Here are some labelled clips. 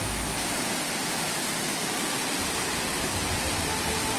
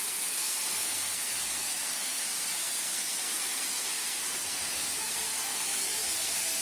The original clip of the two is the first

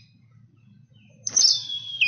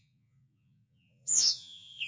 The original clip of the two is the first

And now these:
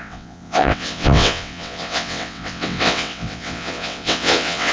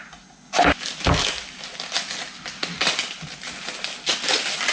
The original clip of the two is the second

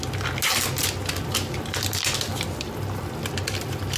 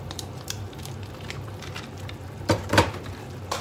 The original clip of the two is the first